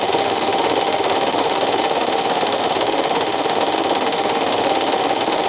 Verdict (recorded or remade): remade